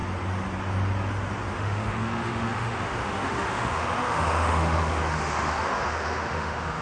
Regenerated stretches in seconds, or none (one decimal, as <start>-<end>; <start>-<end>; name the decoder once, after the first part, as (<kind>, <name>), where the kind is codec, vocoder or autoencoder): 1.5-6.8 (autoencoder, DAC-VAE)